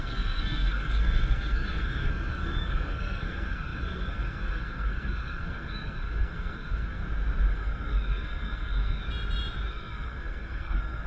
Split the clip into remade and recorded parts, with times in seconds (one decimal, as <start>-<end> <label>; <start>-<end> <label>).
0.0-7.0 remade; 7.0-7.5 recorded; 7.5-9.0 remade; 9.0-9.7 recorded; 9.7-11.1 remade